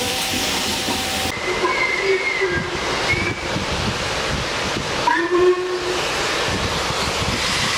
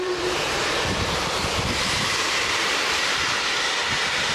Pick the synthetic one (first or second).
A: second